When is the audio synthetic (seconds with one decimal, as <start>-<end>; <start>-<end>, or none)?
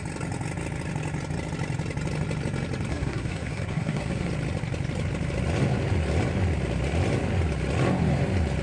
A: 2.9-4.3